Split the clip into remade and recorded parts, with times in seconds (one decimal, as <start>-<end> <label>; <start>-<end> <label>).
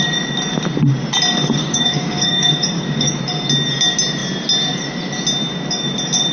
0.0-1.6 recorded; 1.6-3.2 remade; 3.2-6.3 recorded